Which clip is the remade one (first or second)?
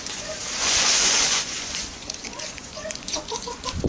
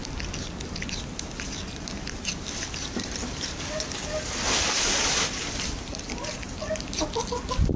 first